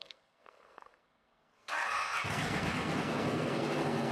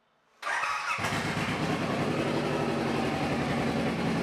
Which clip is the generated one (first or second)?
first